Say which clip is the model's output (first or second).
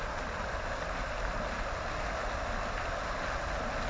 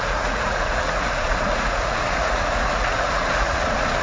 second